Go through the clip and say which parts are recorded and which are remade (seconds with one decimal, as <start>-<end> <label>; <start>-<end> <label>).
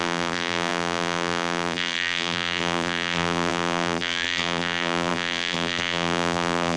0.0-6.8 remade